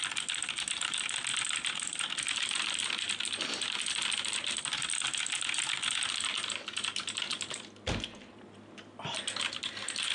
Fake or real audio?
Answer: real